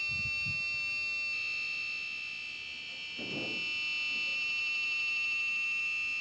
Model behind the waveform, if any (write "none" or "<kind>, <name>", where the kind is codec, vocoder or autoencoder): none